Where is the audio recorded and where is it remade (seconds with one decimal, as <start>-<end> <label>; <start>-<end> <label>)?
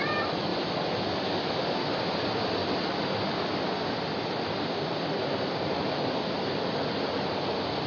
0.0-7.9 recorded